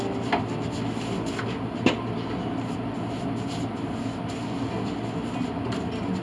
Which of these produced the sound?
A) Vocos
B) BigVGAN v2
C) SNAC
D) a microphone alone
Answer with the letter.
D